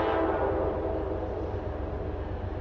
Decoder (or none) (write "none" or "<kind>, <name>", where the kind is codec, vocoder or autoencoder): none